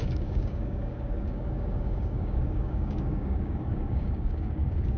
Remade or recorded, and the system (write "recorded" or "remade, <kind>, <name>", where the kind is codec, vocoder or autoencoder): remade, codec, DAC